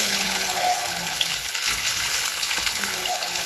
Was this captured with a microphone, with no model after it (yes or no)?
no